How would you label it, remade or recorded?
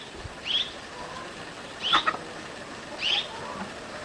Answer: recorded